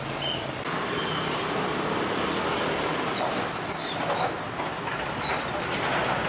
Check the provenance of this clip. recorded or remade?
recorded